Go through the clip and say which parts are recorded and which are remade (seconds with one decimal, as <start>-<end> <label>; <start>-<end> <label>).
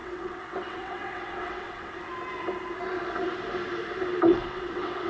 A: 0.0-2.1 remade; 2.1-4.3 recorded; 4.3-5.1 remade